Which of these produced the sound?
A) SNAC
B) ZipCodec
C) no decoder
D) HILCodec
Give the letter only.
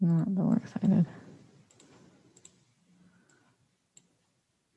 C